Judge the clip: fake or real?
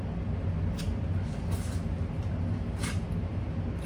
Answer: real